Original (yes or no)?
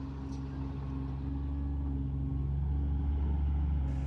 yes